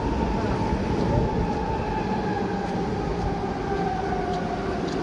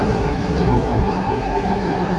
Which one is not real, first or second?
second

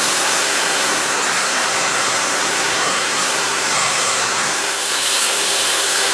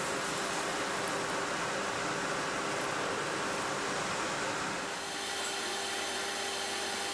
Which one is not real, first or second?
first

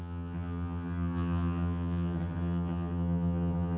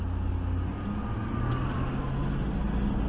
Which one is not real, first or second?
first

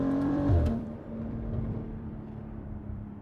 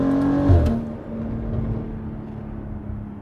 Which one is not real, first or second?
first